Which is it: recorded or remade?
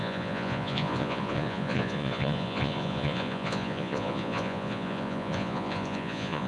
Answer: remade